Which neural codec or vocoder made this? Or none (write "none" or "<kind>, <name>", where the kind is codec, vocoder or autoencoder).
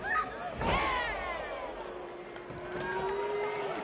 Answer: none